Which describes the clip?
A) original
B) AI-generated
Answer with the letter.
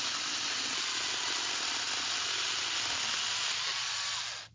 A